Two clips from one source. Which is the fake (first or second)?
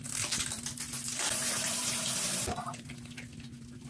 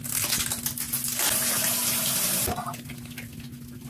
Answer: first